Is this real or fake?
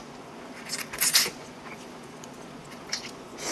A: fake